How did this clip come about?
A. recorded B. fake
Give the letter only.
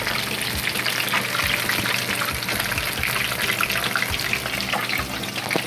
A